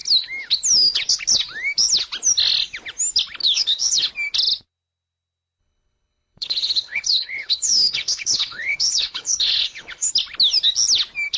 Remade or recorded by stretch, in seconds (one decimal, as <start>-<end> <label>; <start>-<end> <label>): 0.0-3.4 recorded; 3.4-4.1 remade; 4.1-5.6 recorded; 5.6-10.1 remade; 10.1-11.4 recorded